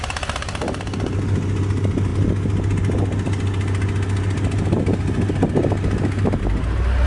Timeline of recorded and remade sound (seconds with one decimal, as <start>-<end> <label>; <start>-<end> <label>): 0.0-7.1 recorded